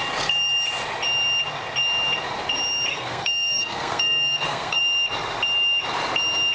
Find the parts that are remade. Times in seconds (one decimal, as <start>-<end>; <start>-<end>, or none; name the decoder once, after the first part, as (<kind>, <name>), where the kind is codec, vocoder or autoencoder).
2.9-4.8 (codec, SNAC)